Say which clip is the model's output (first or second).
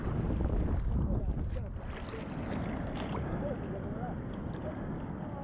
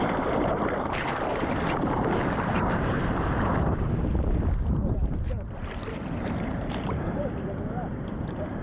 second